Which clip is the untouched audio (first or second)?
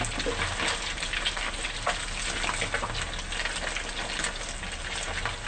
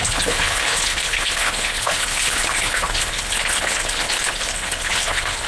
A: first